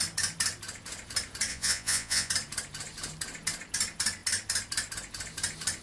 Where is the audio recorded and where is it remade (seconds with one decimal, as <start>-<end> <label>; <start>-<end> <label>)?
0.0-1.5 recorded; 1.5-2.3 remade; 2.3-5.8 recorded